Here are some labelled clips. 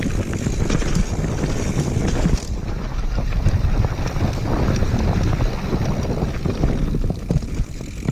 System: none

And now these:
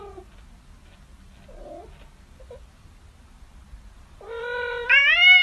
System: none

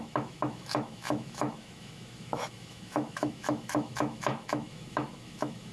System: autoencoder, DAC-VAE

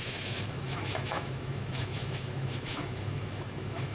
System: autoencoder, DAC-VAE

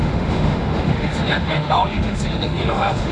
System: autoencoder, DAC-VAE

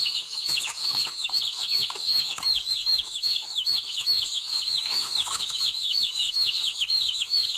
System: autoencoder, DAC-VAE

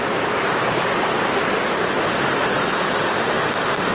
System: none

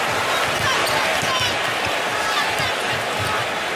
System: none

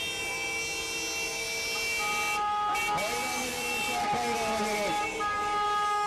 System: none